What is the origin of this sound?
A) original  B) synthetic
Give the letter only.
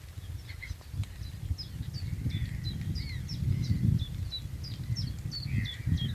A